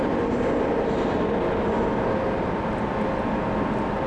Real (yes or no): yes